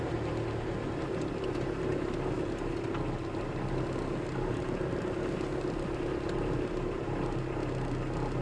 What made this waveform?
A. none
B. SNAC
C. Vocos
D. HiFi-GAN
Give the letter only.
A